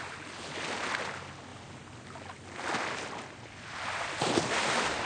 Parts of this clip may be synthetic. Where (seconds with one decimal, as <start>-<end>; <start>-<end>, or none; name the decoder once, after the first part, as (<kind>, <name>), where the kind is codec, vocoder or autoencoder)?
none